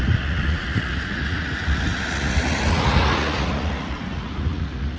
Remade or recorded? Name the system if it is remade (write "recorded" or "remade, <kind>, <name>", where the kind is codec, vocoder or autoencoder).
remade, vocoder, Vocos